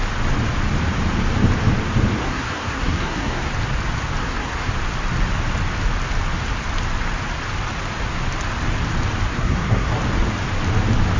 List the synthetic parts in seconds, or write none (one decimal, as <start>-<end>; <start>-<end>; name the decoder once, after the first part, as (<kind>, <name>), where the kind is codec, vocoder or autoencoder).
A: 2.2-3.5 (codec, SNAC); 4.2-4.7; 9.3-9.9